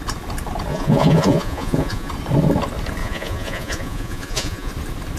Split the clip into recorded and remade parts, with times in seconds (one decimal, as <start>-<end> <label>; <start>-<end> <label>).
0.0-0.7 recorded; 0.7-2.1 remade; 2.1-3.0 recorded; 3.0-4.7 remade; 4.7-5.2 recorded